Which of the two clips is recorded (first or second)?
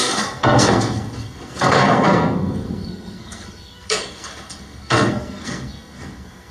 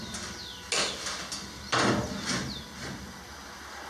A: second